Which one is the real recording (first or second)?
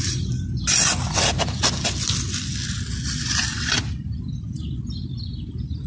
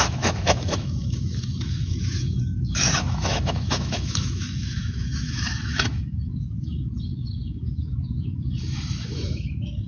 first